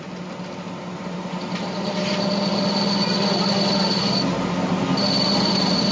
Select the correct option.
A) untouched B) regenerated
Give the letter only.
A